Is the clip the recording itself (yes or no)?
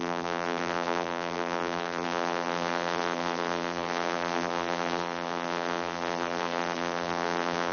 no